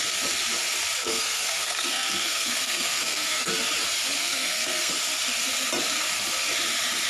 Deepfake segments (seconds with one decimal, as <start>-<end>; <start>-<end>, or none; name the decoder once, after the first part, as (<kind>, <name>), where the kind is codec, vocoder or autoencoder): 1.0-3.5 (codec, SNAC); 4.2-4.9

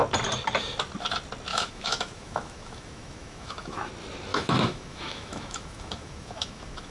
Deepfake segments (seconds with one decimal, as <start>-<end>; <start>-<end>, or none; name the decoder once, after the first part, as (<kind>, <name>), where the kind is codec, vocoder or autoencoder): 1.5-3.9 (autoencoder, DAC-VAE); 4.3-6.9

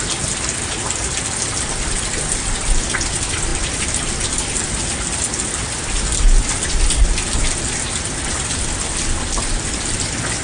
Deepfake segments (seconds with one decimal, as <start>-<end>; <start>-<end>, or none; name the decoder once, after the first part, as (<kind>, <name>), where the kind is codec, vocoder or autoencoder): none